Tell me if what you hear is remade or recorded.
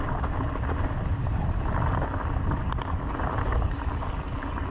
recorded